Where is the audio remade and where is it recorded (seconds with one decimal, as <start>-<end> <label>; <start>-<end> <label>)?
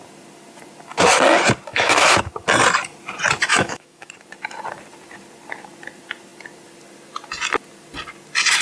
0.0-1.7 recorded; 1.7-2.2 remade; 2.2-3.5 recorded; 3.5-4.1 remade; 4.1-8.6 recorded